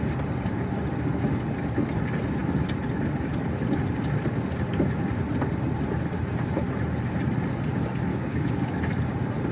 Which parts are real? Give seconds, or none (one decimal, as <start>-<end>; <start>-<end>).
0.0-8.1; 8.8-9.5